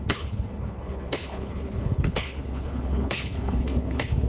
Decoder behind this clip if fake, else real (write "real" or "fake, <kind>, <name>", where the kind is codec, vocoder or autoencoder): fake, codec, HILCodec